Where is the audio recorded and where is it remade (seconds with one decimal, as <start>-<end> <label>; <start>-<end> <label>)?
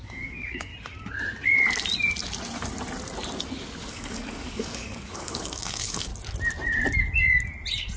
0.0-0.7 remade; 0.7-3.9 recorded; 3.9-6.1 remade; 6.1-8.0 recorded